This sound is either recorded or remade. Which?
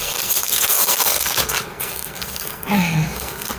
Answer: remade